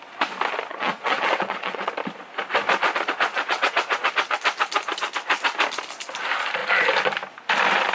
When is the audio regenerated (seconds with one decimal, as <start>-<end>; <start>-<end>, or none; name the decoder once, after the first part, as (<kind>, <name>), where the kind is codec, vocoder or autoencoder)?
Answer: 0.7-1.9 (vocoder, WaveNeXt); 3.3-4.1